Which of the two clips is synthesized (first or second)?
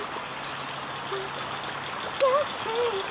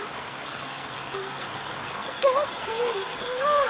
second